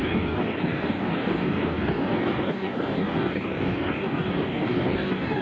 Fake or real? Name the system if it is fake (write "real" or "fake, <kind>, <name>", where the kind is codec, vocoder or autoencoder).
fake, codec, DAC